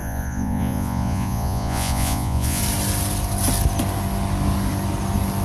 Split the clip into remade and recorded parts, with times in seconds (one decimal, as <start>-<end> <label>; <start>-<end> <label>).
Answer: 0.0-2.6 remade; 2.6-5.4 recorded